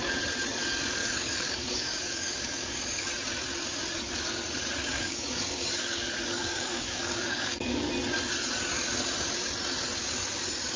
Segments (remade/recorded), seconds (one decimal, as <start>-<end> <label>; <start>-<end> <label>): 0.0-1.0 recorded; 1.0-3.1 remade; 3.1-4.8 recorded; 4.8-7.9 remade; 7.9-10.8 recorded